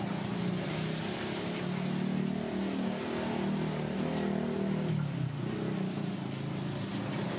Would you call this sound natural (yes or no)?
yes